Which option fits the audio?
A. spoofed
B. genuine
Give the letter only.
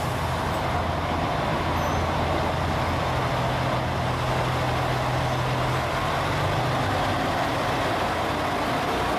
B